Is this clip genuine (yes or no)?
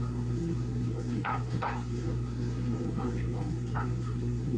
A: no